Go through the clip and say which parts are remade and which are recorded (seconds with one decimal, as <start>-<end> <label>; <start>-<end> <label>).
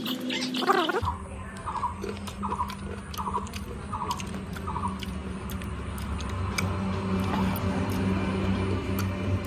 0.0-9.5 recorded